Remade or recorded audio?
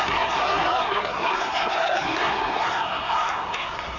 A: remade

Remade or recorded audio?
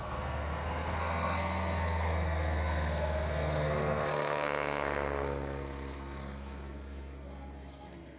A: remade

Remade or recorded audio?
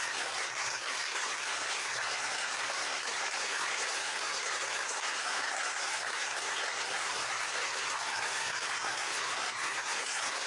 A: remade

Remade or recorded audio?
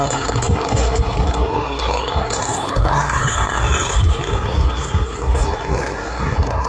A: remade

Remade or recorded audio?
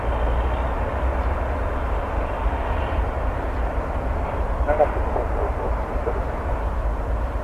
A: recorded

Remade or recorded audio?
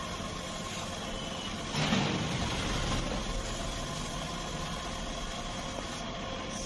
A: recorded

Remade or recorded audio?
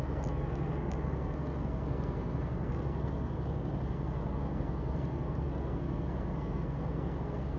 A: remade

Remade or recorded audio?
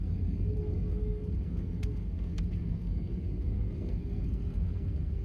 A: remade